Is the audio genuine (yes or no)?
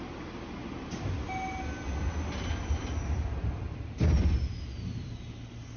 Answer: yes